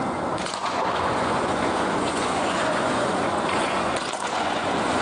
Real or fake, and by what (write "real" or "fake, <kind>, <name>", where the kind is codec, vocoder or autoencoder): fake, vocoder, Vocos